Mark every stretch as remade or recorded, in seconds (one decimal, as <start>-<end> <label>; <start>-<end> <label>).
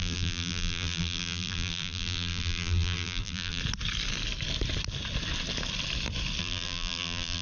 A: 0.0-3.6 remade; 3.6-6.4 recorded; 6.4-7.4 remade